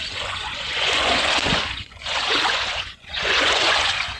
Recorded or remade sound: remade